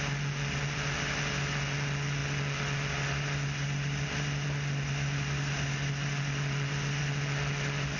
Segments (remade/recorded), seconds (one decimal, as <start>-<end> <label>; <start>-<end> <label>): 0.0-8.0 recorded